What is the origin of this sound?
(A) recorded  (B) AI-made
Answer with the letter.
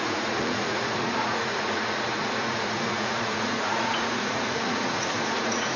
B